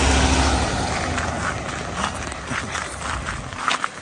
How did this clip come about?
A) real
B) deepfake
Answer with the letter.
A